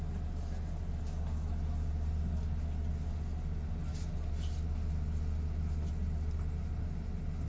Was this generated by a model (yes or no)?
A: no